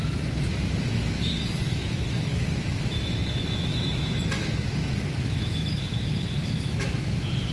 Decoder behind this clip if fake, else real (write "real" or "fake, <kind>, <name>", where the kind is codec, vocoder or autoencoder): fake, autoencoder, DAC-VAE